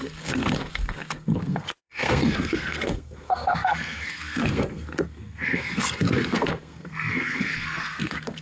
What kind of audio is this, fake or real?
fake